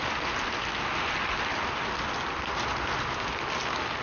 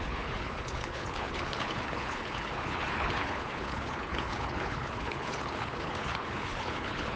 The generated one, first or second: second